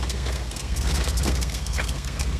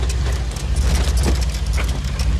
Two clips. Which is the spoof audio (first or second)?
first